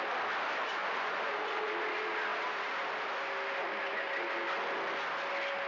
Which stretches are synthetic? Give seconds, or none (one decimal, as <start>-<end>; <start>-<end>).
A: 0.8-1.7